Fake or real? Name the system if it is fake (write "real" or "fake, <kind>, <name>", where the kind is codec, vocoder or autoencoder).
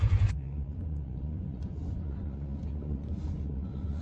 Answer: fake, vocoder, Vocos